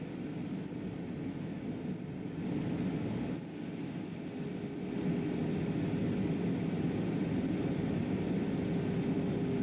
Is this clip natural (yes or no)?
yes